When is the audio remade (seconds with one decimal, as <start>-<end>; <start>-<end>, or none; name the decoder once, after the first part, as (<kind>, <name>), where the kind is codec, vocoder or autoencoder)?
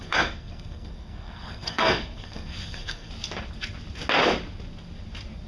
0.0-3.1 (codec, SNAC)